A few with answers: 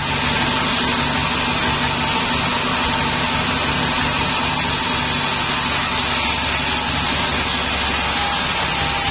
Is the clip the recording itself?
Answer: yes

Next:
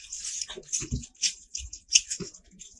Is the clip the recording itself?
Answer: yes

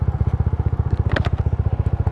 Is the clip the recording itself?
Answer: yes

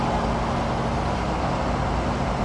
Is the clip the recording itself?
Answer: yes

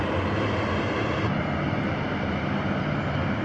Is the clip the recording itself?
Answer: yes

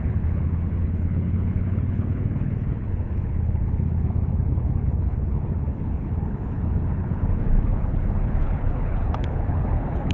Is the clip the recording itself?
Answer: no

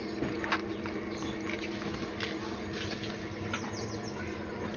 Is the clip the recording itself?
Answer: yes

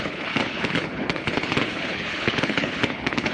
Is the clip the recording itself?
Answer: no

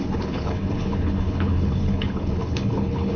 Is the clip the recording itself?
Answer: no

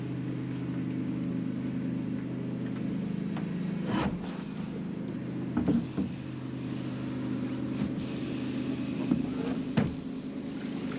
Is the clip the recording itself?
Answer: yes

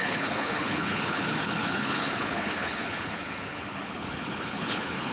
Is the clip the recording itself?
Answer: no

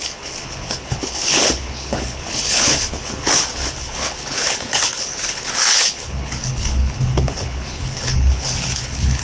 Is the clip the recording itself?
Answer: no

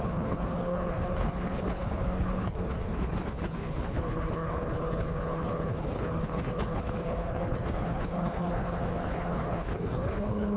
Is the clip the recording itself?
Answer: no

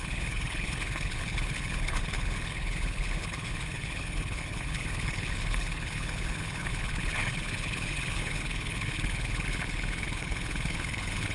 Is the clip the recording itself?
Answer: no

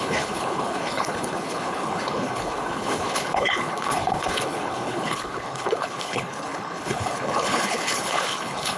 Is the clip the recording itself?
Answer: no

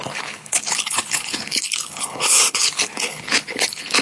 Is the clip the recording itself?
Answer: no